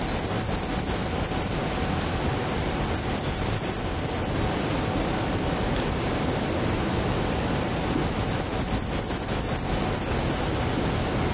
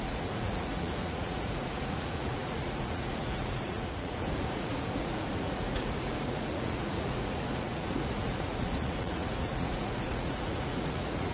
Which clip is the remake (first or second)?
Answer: second